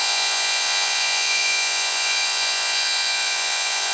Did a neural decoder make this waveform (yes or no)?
yes